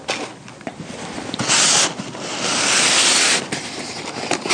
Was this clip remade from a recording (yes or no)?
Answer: no